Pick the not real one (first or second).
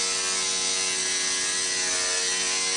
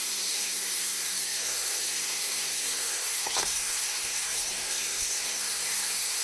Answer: second